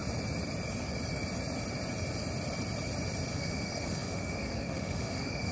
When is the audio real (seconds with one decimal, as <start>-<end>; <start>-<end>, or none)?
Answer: 0.0-3.3